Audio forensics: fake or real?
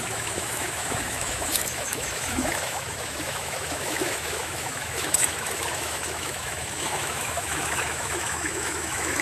fake